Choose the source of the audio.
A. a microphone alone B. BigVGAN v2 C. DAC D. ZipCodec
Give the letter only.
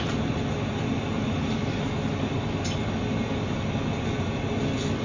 A